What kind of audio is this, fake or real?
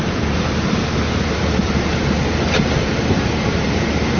fake